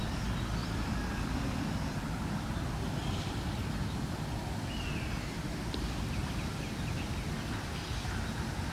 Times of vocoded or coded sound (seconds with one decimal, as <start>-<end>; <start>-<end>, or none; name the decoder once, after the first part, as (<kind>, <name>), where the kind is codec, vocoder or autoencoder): 0.6-1.7 (vocoder, BigVGAN v2); 3.0-4.4; 6.2-6.7